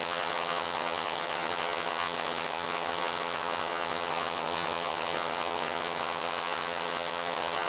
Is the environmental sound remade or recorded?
remade